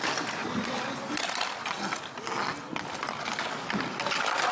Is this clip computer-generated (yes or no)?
no